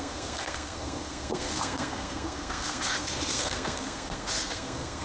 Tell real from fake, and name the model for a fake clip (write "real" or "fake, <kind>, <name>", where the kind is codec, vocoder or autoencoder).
fake, codec, SNAC